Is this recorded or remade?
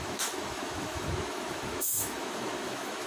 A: remade